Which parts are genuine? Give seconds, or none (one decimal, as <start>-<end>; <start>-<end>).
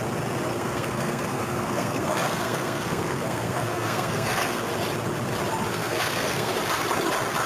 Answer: 0.0-0.5; 4.7-5.7; 6.5-7.5